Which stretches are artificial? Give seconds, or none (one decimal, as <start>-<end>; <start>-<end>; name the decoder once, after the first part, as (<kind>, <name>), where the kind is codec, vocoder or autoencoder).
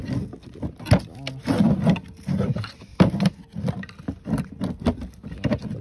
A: none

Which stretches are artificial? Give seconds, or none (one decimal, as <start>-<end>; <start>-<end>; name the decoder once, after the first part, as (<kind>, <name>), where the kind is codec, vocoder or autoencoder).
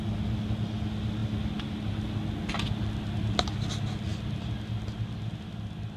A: none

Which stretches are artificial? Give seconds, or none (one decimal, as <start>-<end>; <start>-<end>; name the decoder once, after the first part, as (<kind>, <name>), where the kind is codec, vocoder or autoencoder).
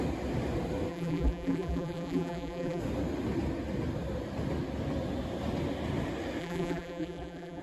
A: 0.9-2.8 (vocoder, BigVGAN v2); 6.4-7.6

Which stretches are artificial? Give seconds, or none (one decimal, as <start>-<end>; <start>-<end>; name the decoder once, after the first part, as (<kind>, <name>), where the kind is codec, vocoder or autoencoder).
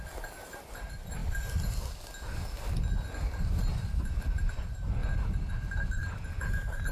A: 0.0-1.2 (vocoder, BigVGAN v2); 4.0-5.0; 5.5-6.9